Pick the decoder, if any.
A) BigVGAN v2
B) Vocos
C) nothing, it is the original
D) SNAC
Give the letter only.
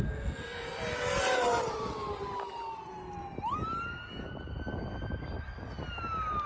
C